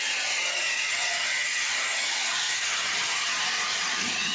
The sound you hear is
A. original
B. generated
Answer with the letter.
B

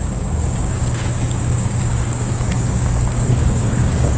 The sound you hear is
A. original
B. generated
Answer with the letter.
B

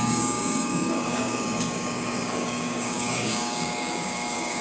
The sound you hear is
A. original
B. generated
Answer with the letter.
B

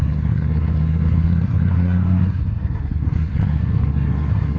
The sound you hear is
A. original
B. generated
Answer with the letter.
B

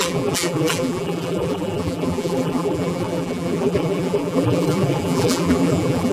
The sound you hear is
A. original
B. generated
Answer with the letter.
B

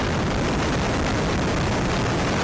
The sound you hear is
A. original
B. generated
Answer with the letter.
A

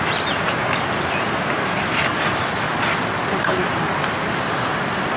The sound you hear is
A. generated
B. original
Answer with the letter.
B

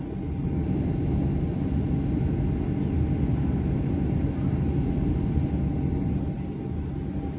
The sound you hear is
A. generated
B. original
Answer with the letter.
B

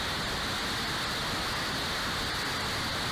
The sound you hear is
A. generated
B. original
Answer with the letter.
B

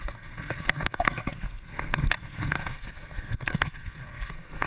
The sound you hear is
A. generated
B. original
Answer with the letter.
A